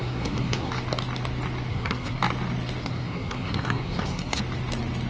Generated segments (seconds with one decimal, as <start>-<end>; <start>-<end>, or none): 0.0-0.7; 1.7-2.2; 2.8-4.4